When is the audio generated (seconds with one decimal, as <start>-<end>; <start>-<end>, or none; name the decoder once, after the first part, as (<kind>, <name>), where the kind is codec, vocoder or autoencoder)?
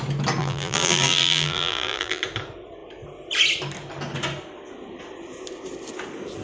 0.4-2.2 (vocoder, BigVGAN v2)